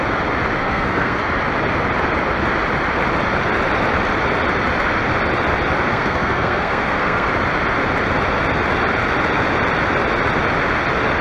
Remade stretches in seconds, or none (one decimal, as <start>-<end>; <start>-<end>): 0.6-1.2; 5.9-7.3